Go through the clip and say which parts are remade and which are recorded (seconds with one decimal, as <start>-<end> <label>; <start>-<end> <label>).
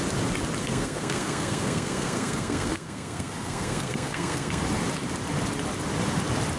0.0-0.6 recorded; 0.6-4.6 remade; 4.6-6.6 recorded